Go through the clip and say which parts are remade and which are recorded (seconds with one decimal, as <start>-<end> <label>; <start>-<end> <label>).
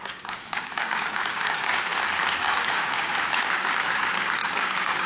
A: 0.0-1.9 remade; 1.9-2.4 recorded; 2.4-5.1 remade